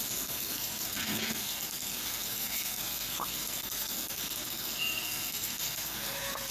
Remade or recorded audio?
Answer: remade